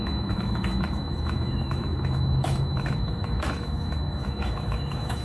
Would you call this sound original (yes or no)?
no